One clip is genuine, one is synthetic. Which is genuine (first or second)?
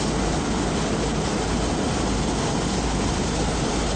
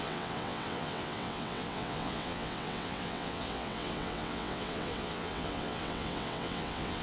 first